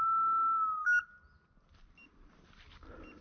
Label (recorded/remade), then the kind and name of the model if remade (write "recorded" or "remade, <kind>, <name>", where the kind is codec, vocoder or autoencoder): recorded